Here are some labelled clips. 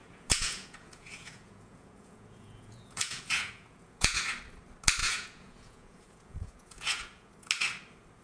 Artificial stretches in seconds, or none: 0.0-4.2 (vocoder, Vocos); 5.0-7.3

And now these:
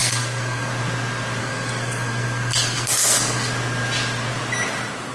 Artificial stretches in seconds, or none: 0.0-0.7 (codec, SNAC); 1.4-3.5

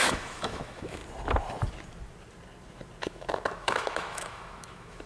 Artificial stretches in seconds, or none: 0.0-1.0 (autoencoder, DAC-VAE); 3.0-5.1